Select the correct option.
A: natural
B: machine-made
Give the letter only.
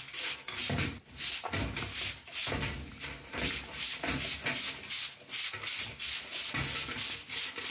A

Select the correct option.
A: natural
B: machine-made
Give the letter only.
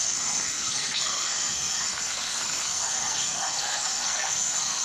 B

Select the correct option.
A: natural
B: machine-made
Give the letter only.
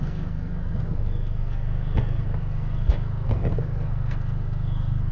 B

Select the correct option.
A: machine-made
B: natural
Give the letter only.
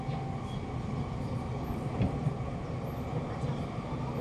B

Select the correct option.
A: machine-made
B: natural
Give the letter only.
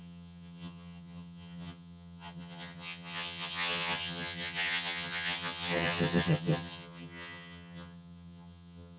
A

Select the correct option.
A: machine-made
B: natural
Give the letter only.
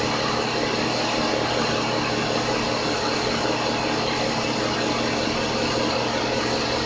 B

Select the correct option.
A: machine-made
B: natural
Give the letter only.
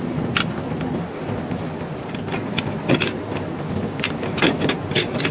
B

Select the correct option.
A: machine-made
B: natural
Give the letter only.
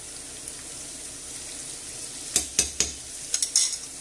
B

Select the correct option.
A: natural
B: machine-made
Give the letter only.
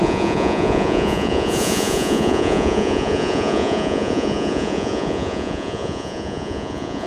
B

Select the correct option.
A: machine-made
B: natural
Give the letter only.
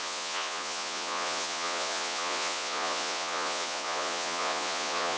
A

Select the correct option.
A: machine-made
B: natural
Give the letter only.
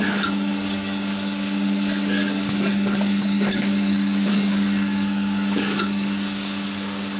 A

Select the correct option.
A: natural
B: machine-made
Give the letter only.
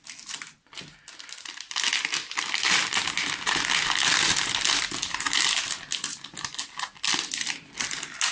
A